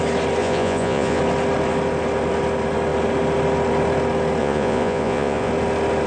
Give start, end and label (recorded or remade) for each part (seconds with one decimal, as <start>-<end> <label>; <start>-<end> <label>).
0.0-0.4 recorded; 0.4-1.2 remade; 1.2-4.4 recorded; 4.4-5.5 remade; 5.5-6.1 recorded